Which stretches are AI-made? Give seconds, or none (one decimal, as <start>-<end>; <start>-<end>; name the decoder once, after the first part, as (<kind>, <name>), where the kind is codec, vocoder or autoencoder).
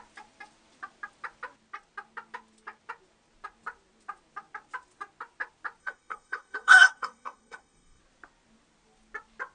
5.8-8.0 (codec, SNAC)